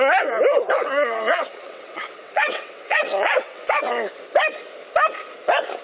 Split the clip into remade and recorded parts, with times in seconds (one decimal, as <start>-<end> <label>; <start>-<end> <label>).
0.0-0.5 recorded; 0.5-3.8 remade; 3.8-5.8 recorded